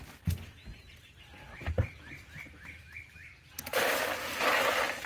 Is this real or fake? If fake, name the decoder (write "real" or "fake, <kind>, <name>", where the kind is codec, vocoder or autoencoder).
real